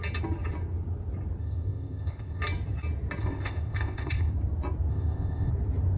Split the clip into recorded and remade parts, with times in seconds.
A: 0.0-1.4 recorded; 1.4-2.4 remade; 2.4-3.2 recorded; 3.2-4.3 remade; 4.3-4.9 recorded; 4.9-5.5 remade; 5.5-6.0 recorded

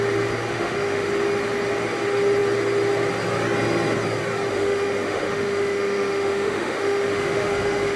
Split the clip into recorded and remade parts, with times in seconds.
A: 0.0-0.5 recorded; 0.5-1.1 remade; 1.1-4.5 recorded; 4.5-8.0 remade